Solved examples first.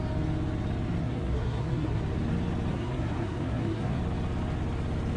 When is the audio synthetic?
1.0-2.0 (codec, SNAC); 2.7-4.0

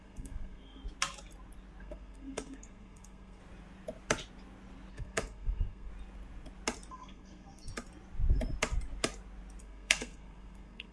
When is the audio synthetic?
0.0-0.8 (codec, SNAC); 1.8-3.4; 4.9-5.9; 6.9-7.7; 9.6-10.9

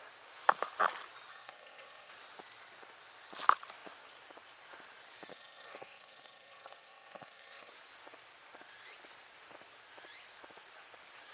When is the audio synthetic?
1.3-2.1 (codec, SNAC); 5.3-7.7

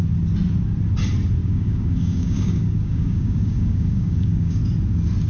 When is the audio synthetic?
1.4-4.6 (codec, DAC)

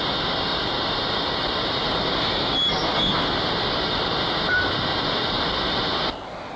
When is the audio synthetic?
none

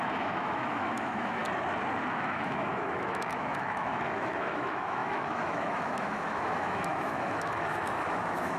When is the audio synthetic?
0.0-1.4 (autoencoder, DAC-VAE); 2.1-8.6

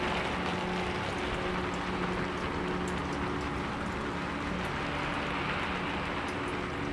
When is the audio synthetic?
none

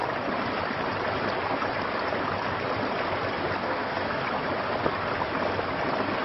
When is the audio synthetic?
3.6-4.2 (codec, SNAC)